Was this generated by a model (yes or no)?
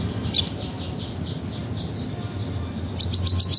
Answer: no